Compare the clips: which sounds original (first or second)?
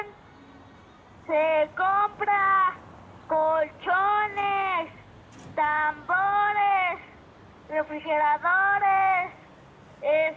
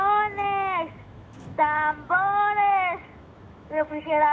first